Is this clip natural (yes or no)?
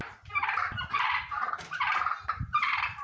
no